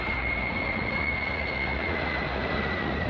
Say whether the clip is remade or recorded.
remade